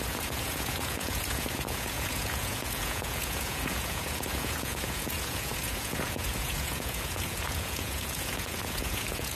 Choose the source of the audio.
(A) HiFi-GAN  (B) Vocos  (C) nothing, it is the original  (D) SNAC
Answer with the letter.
B